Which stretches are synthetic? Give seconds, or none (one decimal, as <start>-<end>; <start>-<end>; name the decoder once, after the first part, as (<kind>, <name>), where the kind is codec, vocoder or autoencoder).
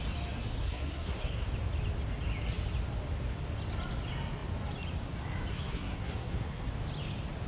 0.6-1.5 (codec, SNAC); 5.5-6.7